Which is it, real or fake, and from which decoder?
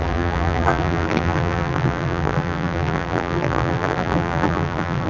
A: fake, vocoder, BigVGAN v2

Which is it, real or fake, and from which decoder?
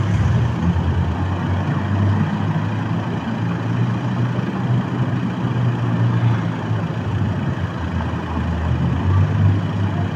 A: real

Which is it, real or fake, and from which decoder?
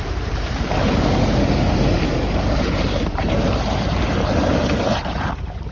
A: fake, vocoder, BigVGAN v2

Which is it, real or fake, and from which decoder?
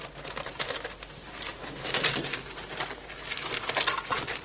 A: real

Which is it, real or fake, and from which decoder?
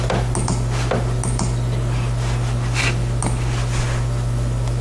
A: real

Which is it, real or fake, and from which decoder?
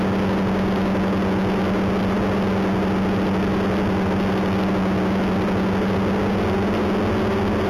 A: real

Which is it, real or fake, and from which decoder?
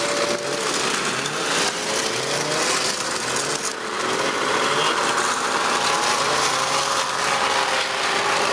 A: real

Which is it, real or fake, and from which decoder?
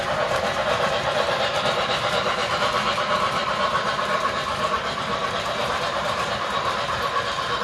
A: fake, vocoder, BigVGAN v2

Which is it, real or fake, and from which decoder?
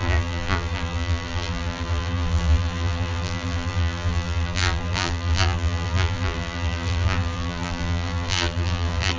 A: fake, vocoder, BigVGAN v2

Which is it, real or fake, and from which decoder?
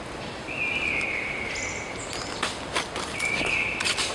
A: real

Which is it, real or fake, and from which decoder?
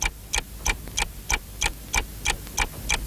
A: real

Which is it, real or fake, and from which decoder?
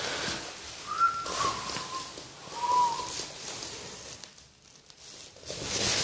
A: real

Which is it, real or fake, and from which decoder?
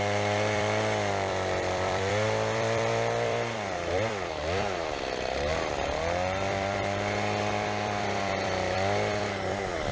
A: fake, vocoder, BigVGAN v2